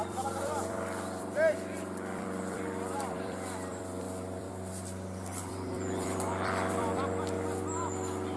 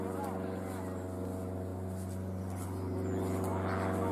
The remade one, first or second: first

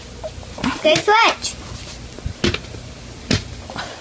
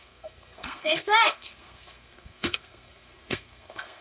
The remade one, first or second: second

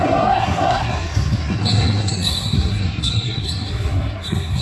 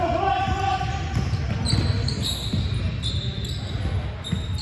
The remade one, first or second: first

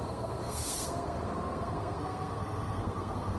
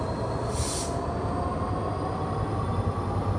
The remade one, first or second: first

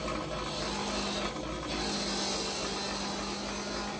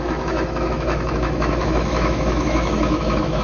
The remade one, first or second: second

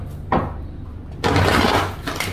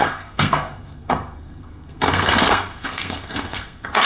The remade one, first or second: second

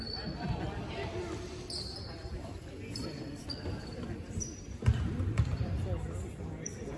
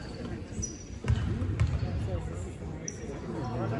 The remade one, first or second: first